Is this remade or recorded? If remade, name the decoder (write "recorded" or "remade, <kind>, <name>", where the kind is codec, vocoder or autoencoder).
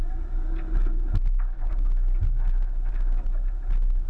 recorded